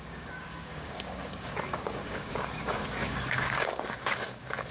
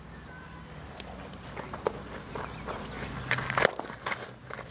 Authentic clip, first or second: second